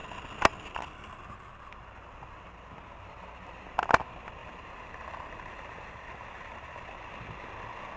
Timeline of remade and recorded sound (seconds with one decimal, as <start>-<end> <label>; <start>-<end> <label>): 0.0-4.4 recorded; 4.4-7.0 remade; 7.0-8.0 recorded